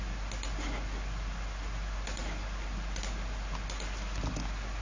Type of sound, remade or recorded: recorded